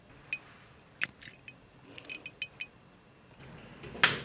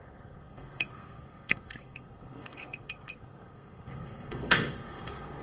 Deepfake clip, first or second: second